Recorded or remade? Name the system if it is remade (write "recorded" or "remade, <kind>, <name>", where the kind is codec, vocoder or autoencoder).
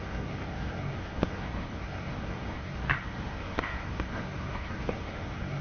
remade, codec, SNAC